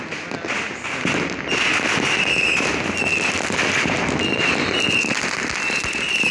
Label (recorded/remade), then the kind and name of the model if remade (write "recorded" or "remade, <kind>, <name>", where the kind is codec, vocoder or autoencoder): recorded